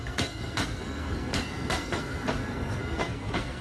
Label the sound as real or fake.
fake